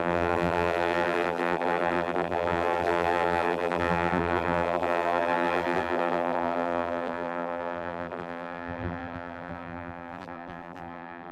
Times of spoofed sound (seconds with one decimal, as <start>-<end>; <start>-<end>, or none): 0.0-11.3